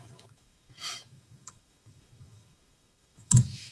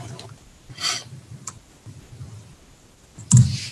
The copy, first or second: first